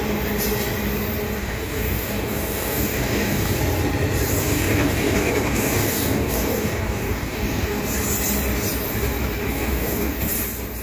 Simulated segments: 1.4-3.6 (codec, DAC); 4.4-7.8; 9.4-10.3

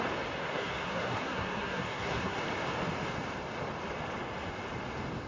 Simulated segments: 0.4-2.4 (codec, SNAC)

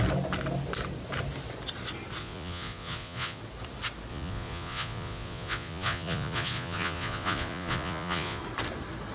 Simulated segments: 2.2-3.4 (vocoder, Vocos); 4.1-8.4

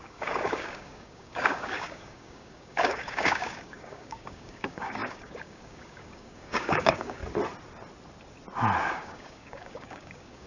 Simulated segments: 0.0-7.2 (codec, DAC); 8.9-10.5

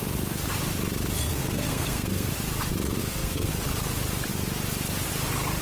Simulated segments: 1.3-2.3 (codec, SNAC); 3.0-3.5

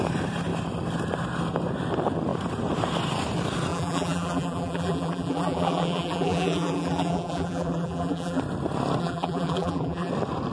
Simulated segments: 3.7-8.4 (vocoder, BigVGAN v2); 9.0-10.1

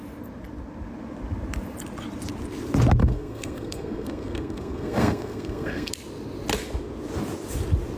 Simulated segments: 3.0-5.9 (codec, SNAC)